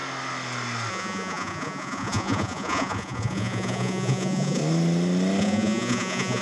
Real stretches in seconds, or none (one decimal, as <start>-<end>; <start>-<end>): 0.0-0.9; 4.6-5.4